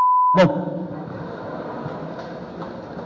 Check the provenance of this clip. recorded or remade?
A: recorded